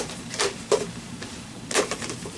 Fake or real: fake